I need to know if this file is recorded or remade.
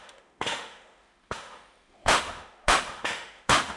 remade